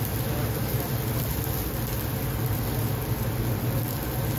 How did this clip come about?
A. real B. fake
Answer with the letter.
A